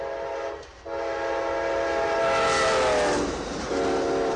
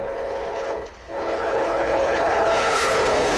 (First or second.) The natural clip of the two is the first